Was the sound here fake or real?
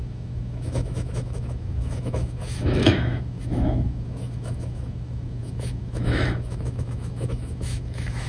fake